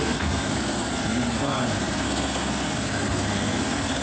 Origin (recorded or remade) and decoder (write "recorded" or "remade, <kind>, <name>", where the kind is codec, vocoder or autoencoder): remade, codec, SNAC